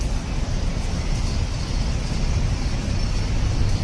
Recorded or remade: recorded